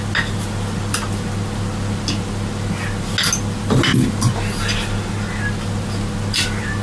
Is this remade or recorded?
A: recorded